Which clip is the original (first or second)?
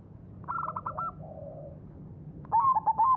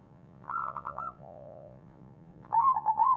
first